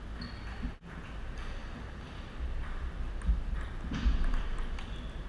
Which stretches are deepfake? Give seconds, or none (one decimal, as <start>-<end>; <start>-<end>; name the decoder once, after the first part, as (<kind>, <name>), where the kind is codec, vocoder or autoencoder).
1.6-4.8 (vocoder, BigVGAN v2)